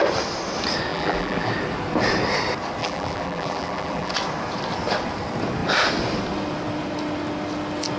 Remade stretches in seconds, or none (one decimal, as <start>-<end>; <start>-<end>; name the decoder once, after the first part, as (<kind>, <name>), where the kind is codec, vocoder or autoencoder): 0.9-1.5 (vocoder, BigVGAN v2); 2.8-4.1